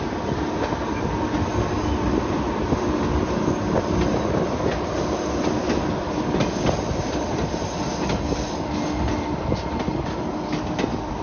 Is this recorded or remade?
recorded